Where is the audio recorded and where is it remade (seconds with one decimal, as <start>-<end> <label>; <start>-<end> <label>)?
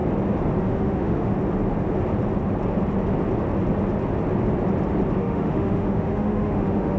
0.0-0.6 recorded; 0.6-1.3 remade; 1.3-5.2 recorded; 5.2-7.0 remade